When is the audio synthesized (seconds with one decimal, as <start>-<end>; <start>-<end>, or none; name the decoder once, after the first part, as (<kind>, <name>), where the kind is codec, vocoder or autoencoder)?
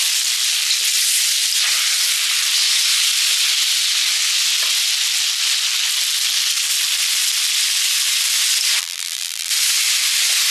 8.8-9.5 (vocoder, BigVGAN v2)